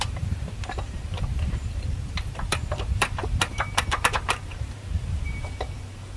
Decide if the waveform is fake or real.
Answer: fake